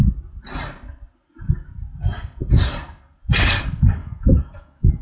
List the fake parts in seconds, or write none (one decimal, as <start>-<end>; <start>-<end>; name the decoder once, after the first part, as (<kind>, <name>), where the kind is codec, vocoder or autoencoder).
4.0-5.0 (autoencoder, DAC-VAE)